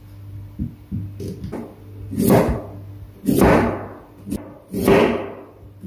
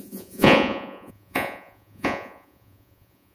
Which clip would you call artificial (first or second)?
second